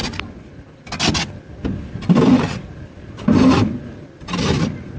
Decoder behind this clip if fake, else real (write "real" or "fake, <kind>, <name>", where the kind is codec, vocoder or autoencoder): real